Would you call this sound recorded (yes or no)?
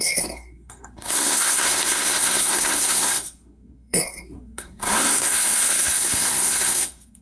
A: no